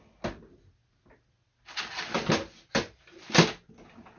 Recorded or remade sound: recorded